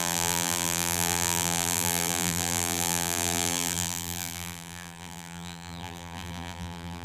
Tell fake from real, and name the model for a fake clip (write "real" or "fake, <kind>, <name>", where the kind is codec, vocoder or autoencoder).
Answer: fake, vocoder, BigVGAN v2